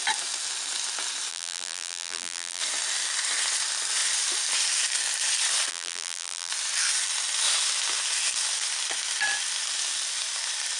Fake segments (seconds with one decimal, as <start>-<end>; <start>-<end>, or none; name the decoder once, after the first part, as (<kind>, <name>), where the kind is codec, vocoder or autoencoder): 1.3-2.6 (vocoder, BigVGAN v2); 5.7-6.5